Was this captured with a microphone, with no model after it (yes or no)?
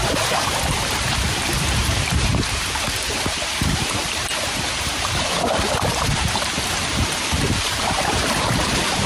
no